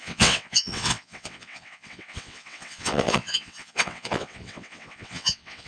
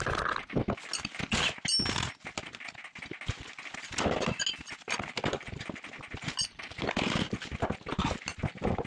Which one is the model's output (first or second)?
first